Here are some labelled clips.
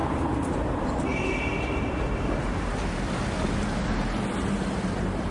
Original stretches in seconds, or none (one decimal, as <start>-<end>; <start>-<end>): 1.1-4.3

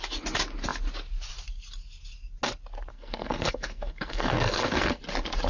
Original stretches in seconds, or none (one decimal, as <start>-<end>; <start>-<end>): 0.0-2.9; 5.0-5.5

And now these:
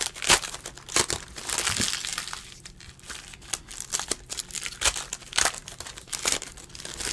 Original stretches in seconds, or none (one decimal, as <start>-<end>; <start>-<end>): 0.0-2.1; 4.3-5.6; 6.5-7.1

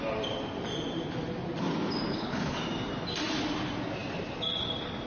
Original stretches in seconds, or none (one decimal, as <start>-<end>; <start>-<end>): 0.0-2.1; 2.6-5.1